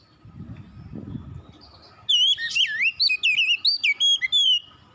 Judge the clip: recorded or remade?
recorded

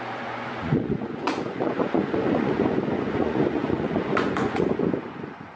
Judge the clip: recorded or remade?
remade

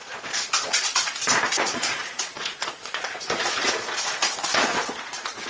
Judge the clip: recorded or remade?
remade